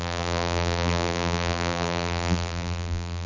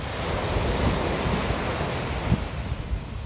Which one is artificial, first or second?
first